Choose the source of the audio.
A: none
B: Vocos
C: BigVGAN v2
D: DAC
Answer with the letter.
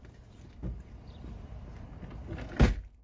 A